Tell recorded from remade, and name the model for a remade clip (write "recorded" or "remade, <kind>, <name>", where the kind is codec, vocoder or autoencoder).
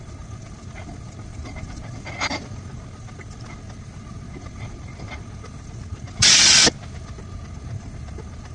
recorded